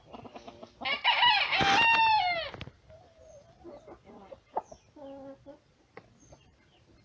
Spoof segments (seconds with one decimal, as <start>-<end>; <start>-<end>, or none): none